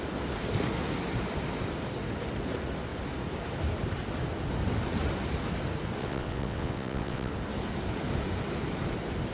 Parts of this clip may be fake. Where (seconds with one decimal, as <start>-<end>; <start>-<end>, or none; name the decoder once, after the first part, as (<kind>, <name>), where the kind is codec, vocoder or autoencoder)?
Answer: 6.0-7.3 (vocoder, WaveNeXt)